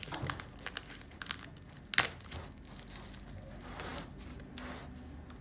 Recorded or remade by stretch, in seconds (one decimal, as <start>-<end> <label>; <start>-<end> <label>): 0.0-5.4 recorded